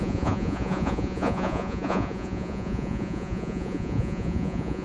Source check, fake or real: fake